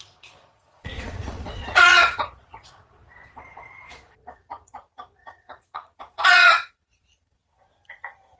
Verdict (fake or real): fake